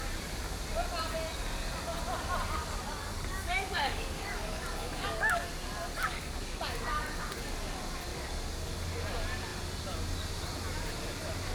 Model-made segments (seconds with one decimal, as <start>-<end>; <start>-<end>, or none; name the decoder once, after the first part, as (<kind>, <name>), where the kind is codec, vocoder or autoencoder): 2.6-5.5 (codec, DAC); 5.9-7.2; 8.1-8.7